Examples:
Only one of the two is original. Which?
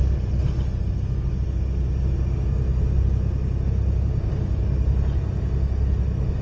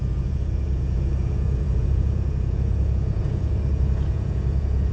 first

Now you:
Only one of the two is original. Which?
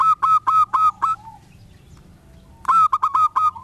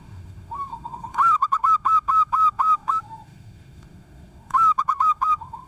first